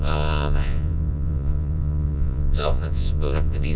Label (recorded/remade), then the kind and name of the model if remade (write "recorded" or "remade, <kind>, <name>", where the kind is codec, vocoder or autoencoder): remade, vocoder, Vocos